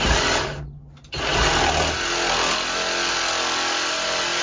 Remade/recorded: recorded